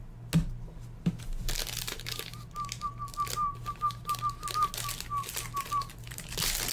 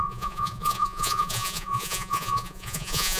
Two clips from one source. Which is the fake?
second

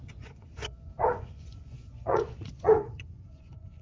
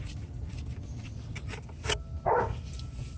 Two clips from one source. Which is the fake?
first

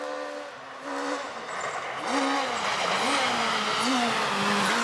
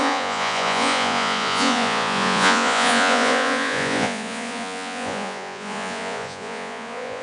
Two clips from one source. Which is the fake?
second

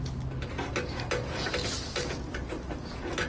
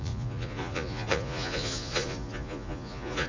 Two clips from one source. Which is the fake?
second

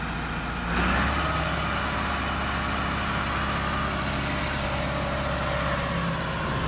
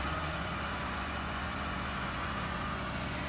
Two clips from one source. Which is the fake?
second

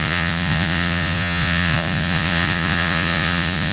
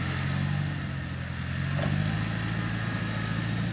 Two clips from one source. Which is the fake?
first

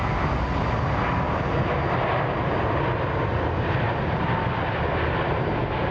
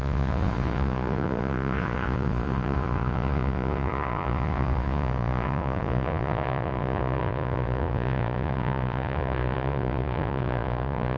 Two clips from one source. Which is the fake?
second